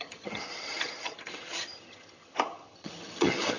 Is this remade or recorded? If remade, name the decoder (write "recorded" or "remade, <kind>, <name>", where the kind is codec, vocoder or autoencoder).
remade, vocoder, HiFi-GAN